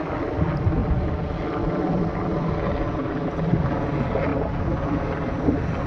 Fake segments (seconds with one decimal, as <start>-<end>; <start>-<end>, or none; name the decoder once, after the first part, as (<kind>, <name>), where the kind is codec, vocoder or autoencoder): none